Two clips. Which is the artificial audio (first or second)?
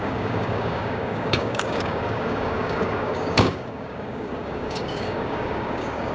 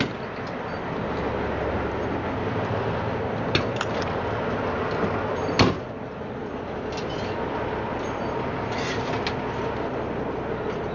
first